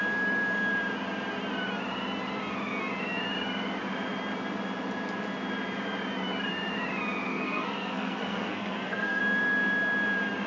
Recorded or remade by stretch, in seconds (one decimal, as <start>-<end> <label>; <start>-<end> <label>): 0.0-7.3 recorded; 7.3-9.2 remade; 9.2-10.5 recorded